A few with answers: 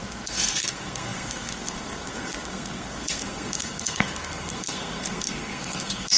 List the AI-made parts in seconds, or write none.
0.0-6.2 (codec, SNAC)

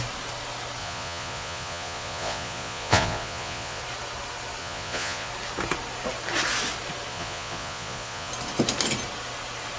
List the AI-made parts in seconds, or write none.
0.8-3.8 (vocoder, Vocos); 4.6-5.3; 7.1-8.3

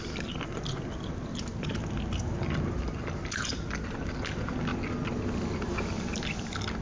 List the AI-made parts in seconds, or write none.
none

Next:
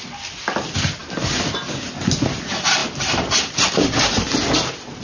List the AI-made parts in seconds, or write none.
2.8-4.5 (vocoder, BigVGAN v2)